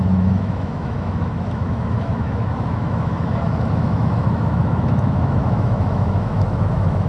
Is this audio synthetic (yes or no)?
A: yes